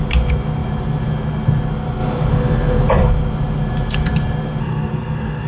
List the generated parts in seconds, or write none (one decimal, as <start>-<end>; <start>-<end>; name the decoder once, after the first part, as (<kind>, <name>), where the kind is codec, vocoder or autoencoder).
4.6-5.5 (codec, SNAC)